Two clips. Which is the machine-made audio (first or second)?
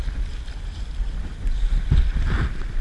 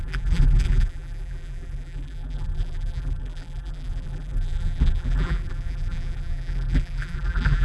second